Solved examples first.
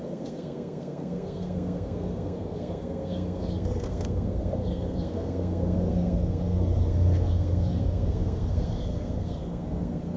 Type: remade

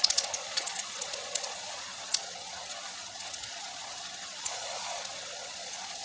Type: remade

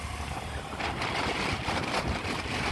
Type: recorded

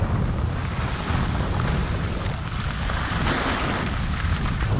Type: recorded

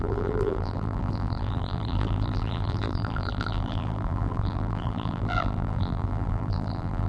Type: remade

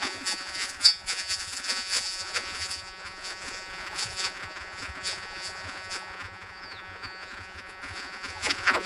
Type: remade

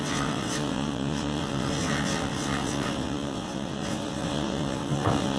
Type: remade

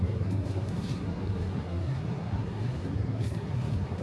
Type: remade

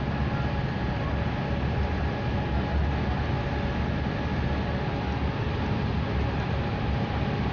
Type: recorded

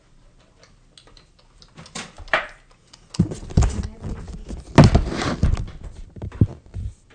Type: recorded